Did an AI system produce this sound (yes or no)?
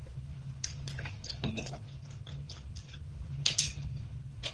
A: yes